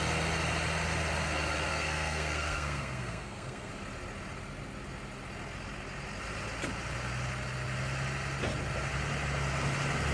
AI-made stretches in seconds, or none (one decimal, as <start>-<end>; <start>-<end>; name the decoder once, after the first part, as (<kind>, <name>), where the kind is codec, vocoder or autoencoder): 1.7-3.7 (codec, SNAC)